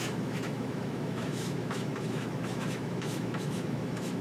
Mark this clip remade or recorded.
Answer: remade